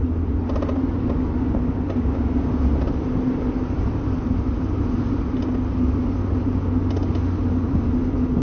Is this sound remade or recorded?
recorded